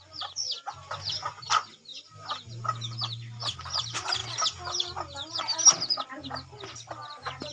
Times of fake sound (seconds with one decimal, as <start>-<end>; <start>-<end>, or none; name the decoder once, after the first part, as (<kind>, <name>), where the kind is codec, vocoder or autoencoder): none